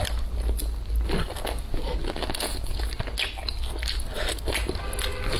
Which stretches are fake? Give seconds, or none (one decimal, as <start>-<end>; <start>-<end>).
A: none